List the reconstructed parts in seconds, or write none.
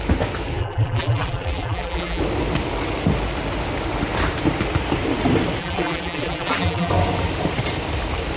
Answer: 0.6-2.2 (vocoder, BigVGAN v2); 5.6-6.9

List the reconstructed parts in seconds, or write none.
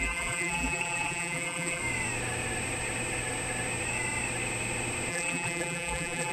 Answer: 0.0-1.8 (vocoder, BigVGAN v2); 5.1-6.3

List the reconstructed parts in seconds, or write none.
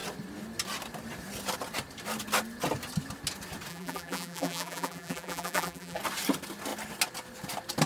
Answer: 3.7-6.0 (vocoder, BigVGAN v2)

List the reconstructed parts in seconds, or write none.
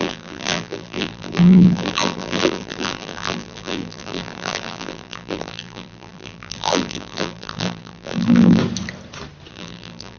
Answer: 0.0-8.6 (vocoder, BigVGAN v2); 9.5-10.2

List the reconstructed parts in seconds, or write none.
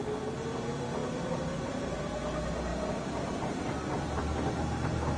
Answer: 1.0-2.0 (vocoder, BigVGAN v2)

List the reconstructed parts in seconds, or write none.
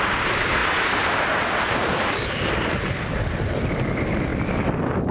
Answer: 0.0-4.3 (vocoder, BigVGAN v2)